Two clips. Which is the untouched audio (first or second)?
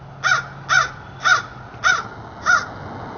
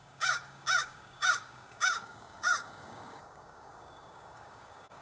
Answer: first